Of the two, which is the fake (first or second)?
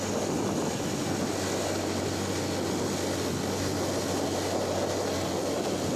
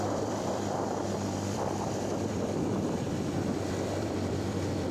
second